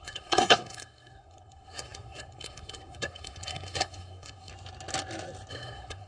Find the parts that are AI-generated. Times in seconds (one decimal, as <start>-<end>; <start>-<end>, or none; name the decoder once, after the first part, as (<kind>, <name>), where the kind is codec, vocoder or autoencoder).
0.0-4.5 (codec, SNAC); 5.5-6.1